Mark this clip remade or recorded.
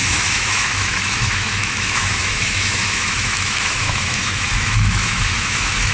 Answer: remade